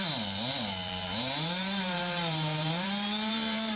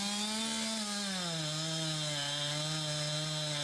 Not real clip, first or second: first